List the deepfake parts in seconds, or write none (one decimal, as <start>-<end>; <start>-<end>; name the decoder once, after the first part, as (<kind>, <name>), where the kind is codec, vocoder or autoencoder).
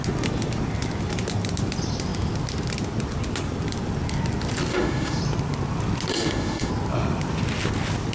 4.7-5.2 (autoencoder, DAC-VAE); 6.1-6.7